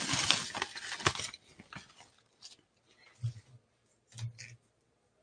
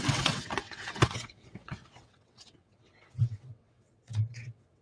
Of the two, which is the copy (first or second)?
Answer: second